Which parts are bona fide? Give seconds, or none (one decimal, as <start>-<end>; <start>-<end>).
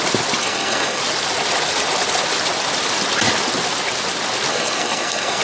0.0-0.4; 1.0-4.5